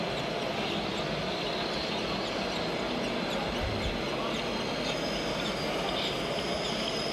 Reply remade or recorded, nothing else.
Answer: recorded